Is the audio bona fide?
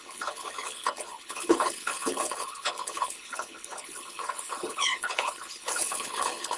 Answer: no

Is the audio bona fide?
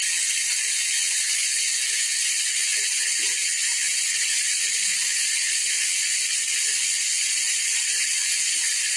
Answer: yes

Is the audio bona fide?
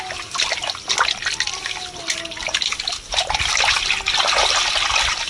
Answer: yes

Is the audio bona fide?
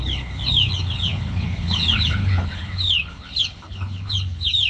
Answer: no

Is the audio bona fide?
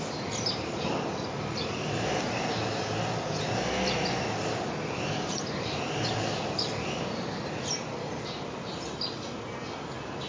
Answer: yes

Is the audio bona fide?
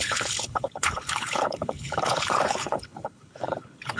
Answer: no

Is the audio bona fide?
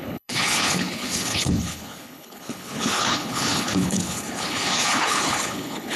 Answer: no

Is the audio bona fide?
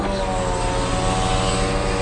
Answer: yes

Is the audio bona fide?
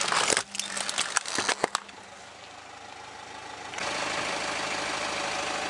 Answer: yes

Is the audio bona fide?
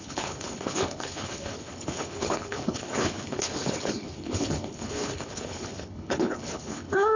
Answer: no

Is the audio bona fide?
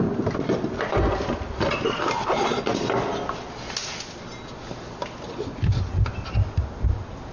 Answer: yes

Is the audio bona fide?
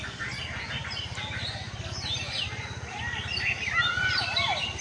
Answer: yes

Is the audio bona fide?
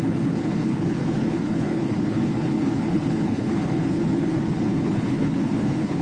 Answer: no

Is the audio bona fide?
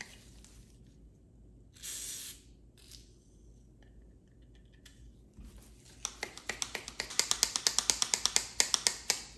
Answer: yes